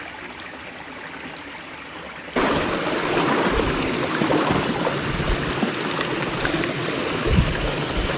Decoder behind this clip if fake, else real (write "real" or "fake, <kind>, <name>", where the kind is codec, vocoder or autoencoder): real